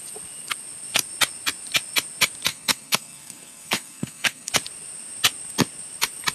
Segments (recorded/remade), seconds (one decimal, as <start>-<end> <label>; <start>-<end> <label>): 0.0-2.5 recorded; 2.5-4.5 remade; 4.5-6.3 recorded